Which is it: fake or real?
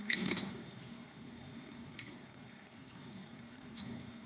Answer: fake